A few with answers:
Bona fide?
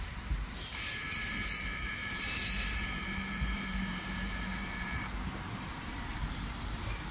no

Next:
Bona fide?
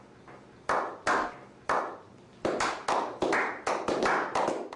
yes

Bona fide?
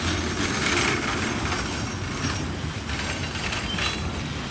yes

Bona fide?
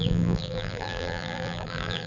no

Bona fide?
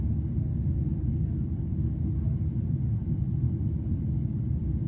yes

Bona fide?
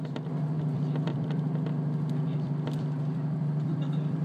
no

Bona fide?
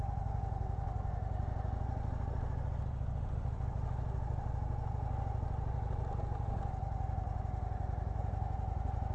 yes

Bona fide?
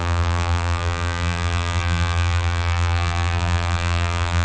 no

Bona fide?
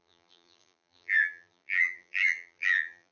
no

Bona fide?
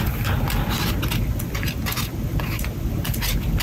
yes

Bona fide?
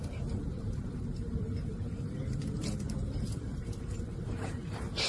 no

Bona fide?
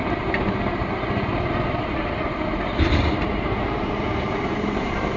no